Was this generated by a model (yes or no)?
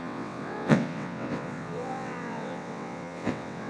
yes